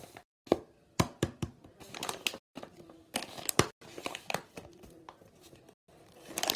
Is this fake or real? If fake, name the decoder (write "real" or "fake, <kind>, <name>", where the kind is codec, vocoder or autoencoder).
real